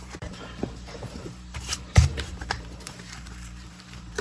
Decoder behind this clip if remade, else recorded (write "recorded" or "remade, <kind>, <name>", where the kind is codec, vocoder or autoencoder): remade, vocoder, BigVGAN v2